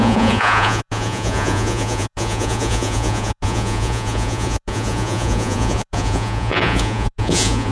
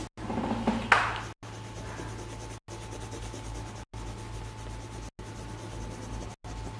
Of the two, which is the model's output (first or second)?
first